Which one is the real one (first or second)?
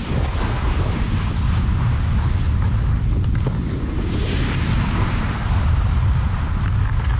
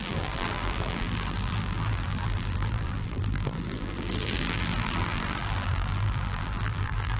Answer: first